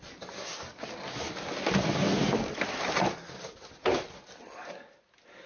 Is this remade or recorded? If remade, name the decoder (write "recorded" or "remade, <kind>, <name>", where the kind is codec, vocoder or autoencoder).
recorded